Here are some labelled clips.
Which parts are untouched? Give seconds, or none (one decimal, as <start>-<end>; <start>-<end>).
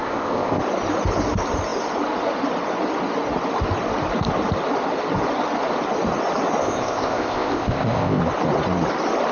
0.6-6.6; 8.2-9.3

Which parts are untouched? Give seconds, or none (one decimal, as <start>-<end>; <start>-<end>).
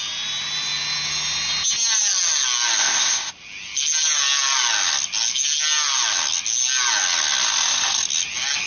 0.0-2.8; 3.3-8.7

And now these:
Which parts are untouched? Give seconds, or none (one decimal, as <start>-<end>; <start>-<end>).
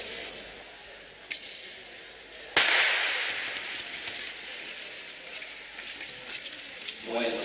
0.0-7.4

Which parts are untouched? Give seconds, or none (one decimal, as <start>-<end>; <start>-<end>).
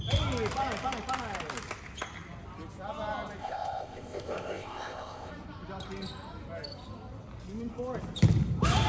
0.0-3.4; 5.3-8.9